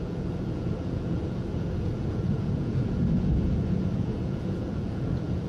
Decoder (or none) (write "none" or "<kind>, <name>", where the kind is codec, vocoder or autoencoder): vocoder, Vocos